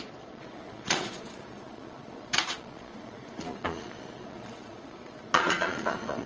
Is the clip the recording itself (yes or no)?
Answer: no